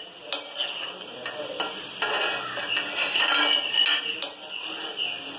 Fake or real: real